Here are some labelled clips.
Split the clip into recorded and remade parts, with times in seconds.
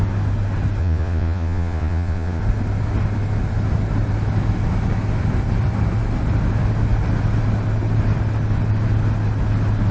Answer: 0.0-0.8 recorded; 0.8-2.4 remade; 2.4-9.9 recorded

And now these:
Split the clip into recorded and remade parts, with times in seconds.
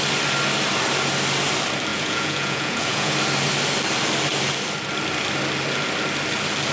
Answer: 0.0-1.9 recorded; 1.9-3.1 remade; 3.1-6.7 recorded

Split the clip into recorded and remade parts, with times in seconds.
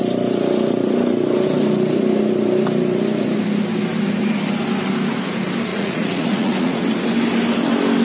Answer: 0.0-5.7 recorded; 5.7-6.8 remade; 6.8-8.0 recorded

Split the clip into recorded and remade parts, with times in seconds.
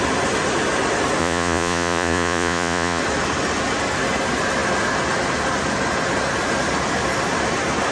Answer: 0.0-1.2 recorded; 1.2-3.0 remade; 3.0-7.9 recorded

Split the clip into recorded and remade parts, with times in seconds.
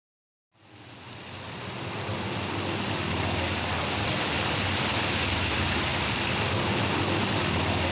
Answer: 0.0-7.9 recorded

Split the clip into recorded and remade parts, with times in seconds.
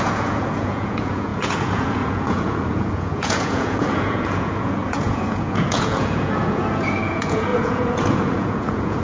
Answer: 0.0-9.0 remade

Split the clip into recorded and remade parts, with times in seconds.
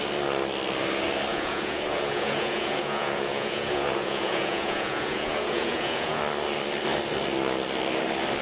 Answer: 0.0-1.3 recorded; 1.3-6.2 remade; 6.2-8.4 recorded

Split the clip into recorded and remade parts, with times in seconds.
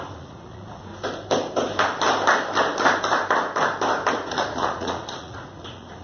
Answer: 0.0-0.9 remade; 0.9-4.1 recorded; 4.1-6.0 remade